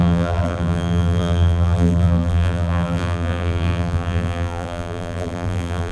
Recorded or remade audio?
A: remade